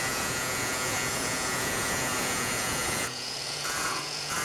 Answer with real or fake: fake